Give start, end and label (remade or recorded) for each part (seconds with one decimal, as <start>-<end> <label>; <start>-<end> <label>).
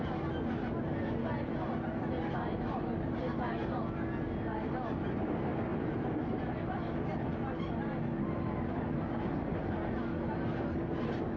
0.0-11.4 recorded